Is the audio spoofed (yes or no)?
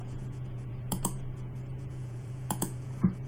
yes